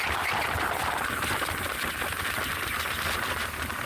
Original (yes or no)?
yes